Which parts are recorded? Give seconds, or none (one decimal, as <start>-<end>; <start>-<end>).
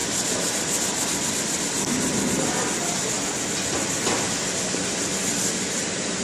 1.3-6.2